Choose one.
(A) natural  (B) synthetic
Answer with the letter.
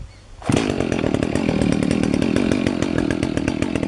A